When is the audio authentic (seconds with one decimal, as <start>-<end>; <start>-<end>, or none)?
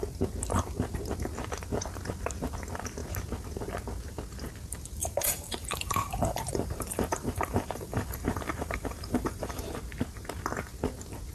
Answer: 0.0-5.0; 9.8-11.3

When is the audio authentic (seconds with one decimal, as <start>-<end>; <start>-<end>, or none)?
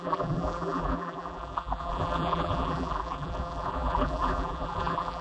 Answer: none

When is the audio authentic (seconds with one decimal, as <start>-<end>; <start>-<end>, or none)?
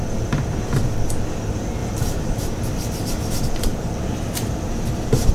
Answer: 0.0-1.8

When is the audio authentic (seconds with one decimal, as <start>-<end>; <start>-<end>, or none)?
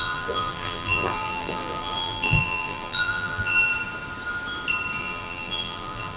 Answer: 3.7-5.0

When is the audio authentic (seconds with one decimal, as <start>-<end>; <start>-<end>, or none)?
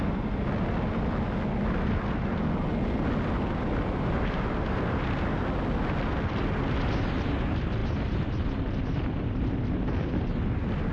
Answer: 0.0-7.8; 10.3-10.9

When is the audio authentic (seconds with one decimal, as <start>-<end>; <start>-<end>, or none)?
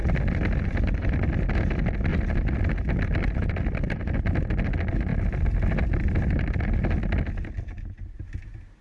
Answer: 1.1-2.1; 4.5-5.1; 5.8-8.8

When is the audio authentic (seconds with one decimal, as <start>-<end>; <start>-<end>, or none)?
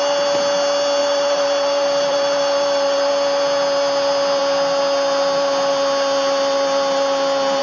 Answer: 0.0-1.0; 3.1-7.6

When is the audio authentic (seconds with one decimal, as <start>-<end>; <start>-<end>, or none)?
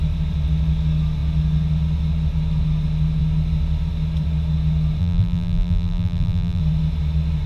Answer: 0.0-5.0; 6.6-7.5